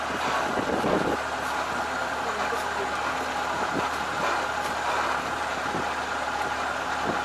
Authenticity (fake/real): real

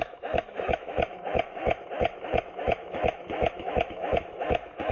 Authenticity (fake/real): fake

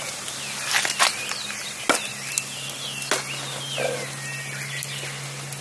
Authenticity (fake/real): real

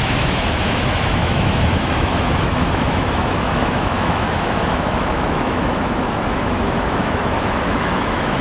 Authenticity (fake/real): fake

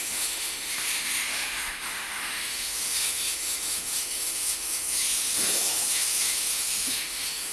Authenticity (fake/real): fake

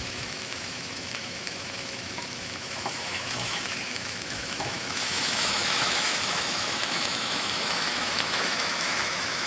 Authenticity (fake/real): fake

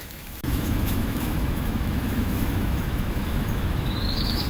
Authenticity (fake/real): fake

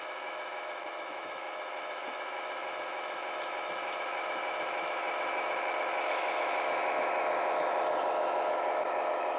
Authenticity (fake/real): fake